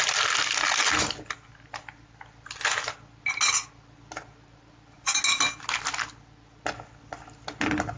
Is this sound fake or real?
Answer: real